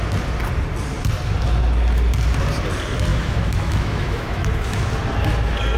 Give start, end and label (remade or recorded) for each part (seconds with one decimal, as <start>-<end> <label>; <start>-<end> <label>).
0.0-3.1 recorded; 3.1-4.9 remade; 4.9-5.8 recorded